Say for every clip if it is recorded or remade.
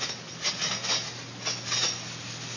recorded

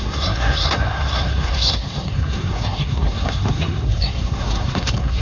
remade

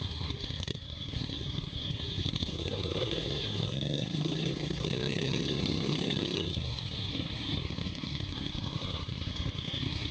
remade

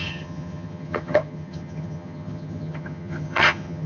remade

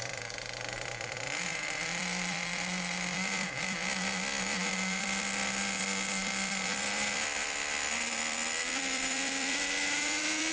remade